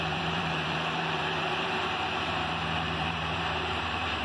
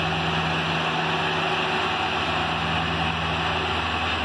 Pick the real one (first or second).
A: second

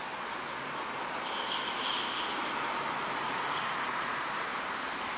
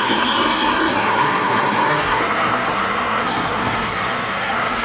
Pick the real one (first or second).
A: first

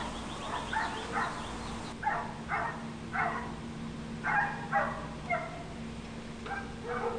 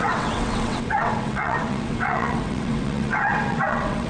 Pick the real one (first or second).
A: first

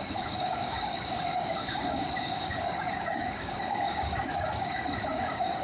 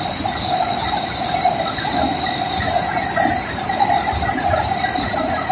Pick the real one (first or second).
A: second